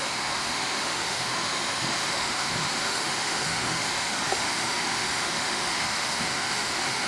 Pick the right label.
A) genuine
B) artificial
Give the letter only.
B